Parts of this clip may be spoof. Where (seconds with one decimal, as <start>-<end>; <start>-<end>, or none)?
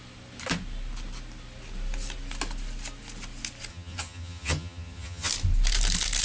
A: 3.7-5.3